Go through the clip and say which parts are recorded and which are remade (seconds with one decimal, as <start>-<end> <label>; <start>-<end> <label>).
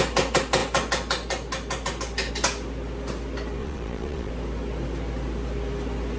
0.0-3.6 recorded; 3.6-4.3 remade; 4.3-6.2 recorded